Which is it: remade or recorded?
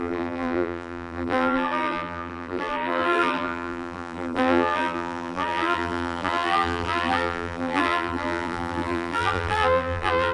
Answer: remade